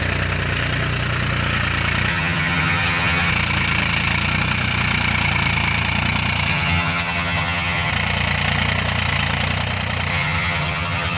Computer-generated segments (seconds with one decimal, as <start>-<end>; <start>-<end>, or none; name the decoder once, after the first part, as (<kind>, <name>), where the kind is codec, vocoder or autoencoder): 2.1-3.3 (vocoder, HiFi-GAN); 6.5-7.9; 10.1-11.2